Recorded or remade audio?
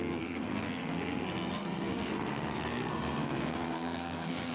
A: remade